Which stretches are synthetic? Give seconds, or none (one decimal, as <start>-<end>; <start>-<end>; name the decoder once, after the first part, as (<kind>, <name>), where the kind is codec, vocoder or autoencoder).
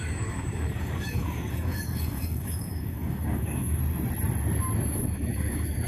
0.0-3.8 (codec, DAC); 4.9-5.9